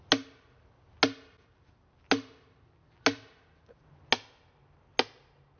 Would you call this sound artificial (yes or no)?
no